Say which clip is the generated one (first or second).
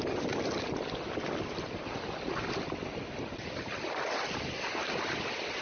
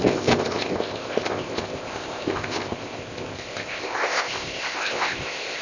second